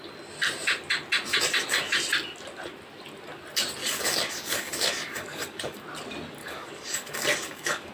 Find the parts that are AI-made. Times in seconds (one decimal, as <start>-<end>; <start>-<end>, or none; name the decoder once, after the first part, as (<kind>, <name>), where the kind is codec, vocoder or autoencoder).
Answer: 3.8-5.8 (codec, DAC); 6.4-7.9